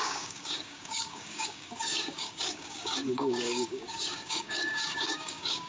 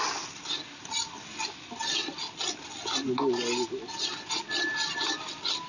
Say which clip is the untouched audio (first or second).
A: second